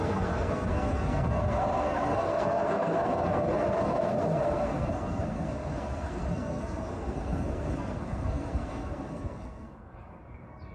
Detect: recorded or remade remade